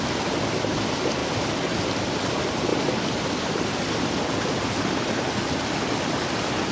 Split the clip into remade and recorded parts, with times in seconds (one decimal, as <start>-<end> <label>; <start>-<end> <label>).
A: 0.0-6.7 recorded